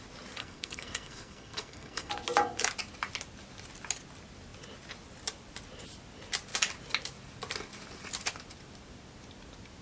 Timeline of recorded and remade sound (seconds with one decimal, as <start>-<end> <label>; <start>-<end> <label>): 0.0-0.4 recorded; 0.4-2.1 remade; 2.1-9.8 recorded